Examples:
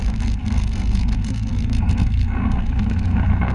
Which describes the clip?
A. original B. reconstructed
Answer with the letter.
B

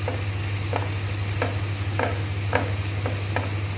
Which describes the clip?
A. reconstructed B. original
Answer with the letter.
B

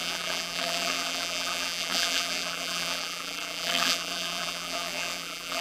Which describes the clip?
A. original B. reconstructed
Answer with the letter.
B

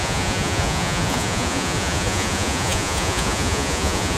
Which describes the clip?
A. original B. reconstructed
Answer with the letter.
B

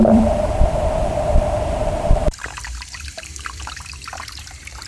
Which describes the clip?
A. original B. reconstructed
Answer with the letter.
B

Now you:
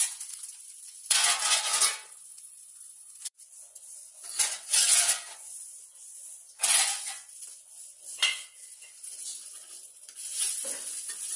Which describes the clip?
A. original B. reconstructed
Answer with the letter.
B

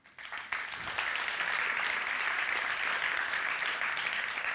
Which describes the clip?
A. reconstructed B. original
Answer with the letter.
B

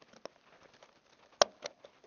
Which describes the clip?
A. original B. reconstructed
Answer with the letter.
A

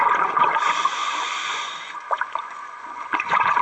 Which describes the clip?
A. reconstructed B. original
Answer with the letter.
A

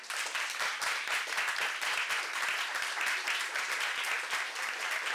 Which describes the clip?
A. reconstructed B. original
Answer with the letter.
B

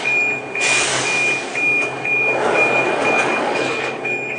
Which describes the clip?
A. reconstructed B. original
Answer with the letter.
A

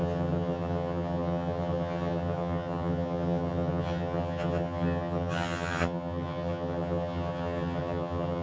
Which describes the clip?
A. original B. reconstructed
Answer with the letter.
B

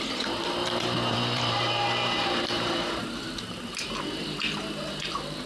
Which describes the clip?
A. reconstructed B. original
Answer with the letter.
A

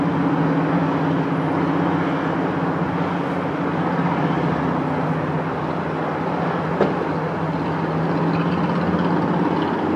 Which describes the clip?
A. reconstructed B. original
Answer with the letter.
B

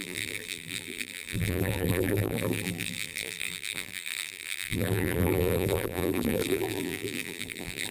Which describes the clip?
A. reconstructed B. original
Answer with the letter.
A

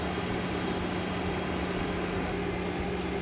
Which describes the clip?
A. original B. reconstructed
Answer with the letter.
A